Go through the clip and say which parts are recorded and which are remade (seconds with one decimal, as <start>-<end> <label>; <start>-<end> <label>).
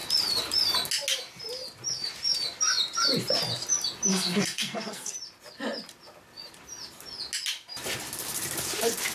0.0-4.1 recorded; 4.1-5.1 remade; 5.1-9.1 recorded